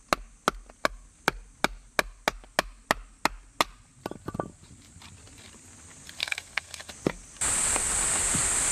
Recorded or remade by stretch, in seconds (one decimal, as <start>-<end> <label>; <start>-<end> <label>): 0.0-6.2 recorded; 6.2-6.9 remade; 6.9-8.7 recorded